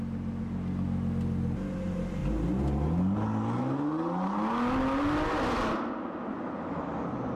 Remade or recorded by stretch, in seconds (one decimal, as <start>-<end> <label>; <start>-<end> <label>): 0.0-7.3 recorded